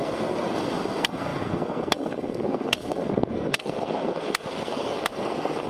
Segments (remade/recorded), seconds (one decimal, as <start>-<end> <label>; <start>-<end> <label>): 0.0-5.7 remade